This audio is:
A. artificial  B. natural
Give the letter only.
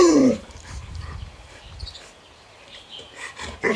A